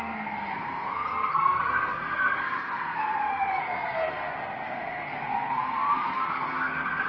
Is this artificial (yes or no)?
yes